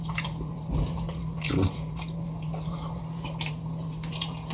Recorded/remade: remade